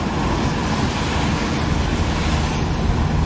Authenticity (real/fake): real